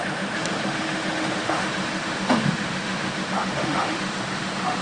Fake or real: fake